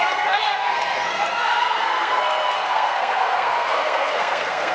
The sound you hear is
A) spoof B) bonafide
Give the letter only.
A